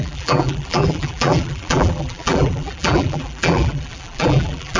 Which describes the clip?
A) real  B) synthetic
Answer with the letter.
B